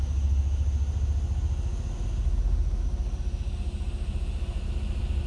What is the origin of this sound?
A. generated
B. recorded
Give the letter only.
B